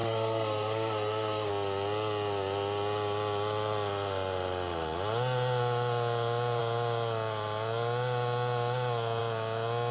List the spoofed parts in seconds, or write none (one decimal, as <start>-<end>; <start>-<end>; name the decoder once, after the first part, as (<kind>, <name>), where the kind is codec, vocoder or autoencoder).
0.0-1.5 (codec, SNAC)